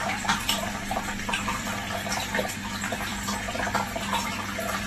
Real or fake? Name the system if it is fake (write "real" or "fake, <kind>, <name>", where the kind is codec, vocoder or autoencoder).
real